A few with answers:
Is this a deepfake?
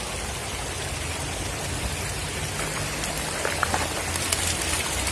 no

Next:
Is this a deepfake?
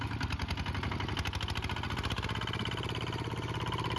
no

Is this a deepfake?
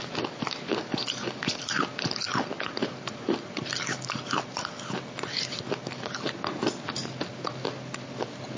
no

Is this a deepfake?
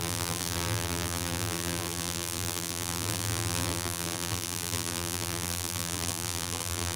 yes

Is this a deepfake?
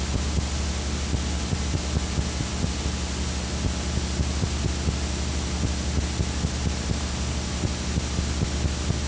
no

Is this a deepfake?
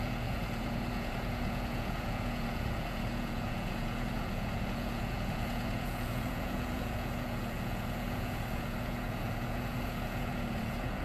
yes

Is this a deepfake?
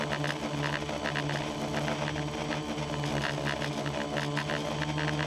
no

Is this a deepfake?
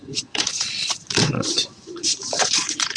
yes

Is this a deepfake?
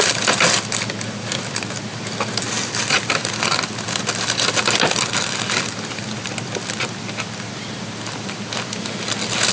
no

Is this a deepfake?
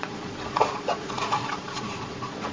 yes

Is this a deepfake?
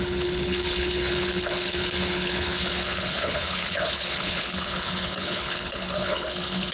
yes